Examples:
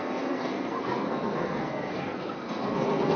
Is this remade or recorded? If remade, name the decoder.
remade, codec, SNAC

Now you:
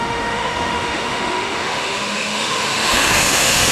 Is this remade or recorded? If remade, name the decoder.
remade, autoencoder, DAC-VAE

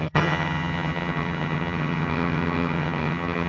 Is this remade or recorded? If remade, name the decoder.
remade, vocoder, HiFi-GAN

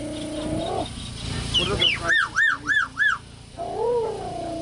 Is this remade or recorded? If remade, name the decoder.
recorded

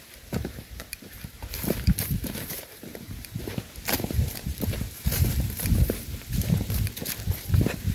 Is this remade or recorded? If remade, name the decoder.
remade, vocoder, BigVGAN v2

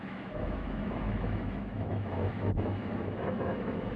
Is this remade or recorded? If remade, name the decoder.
remade, autoencoder, DAC-VAE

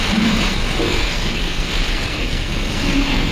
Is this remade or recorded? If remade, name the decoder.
remade, codec, SNAC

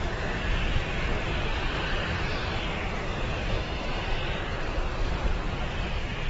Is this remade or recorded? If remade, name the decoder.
recorded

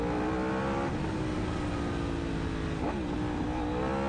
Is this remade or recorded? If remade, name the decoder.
recorded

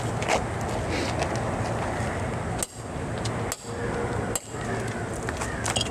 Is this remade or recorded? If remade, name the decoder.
recorded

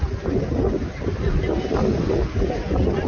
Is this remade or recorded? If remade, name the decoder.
recorded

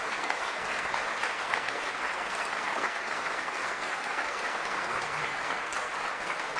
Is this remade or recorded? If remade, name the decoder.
remade, codec, SNAC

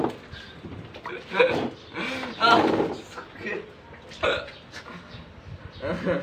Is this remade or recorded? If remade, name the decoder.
recorded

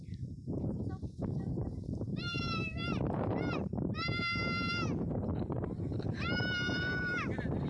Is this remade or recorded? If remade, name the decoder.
remade, vocoder, BigVGAN v2